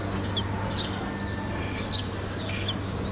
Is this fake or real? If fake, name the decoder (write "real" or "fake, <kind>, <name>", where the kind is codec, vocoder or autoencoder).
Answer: real